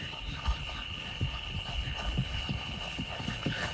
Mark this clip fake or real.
fake